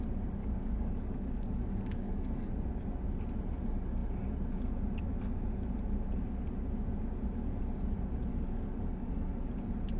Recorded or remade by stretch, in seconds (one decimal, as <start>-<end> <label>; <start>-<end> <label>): 0.0-0.4 recorded; 0.4-2.5 remade; 2.5-8.3 recorded; 8.3-9.5 remade; 9.5-10.0 recorded